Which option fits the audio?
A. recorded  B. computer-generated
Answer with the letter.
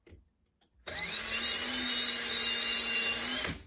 A